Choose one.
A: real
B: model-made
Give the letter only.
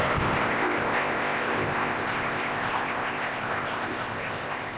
B